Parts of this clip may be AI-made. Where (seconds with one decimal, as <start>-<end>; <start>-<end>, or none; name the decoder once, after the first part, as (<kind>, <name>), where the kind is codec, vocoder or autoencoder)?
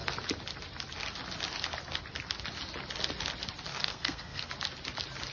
3.7-4.5 (codec, SNAC)